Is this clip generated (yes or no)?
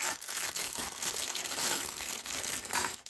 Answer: yes